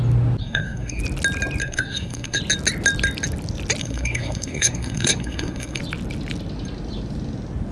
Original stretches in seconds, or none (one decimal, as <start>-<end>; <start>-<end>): 0.0-0.4; 1.0-1.6; 2.4-3.8; 5.8-7.7